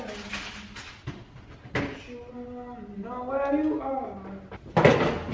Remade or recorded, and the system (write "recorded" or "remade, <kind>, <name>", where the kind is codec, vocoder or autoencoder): recorded